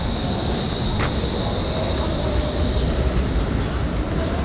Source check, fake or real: real